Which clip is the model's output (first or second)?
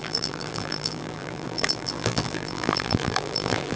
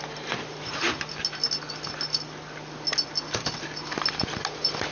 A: first